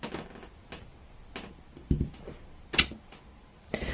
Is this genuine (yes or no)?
yes